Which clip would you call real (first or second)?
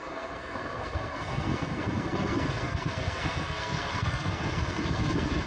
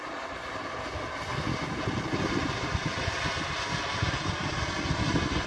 second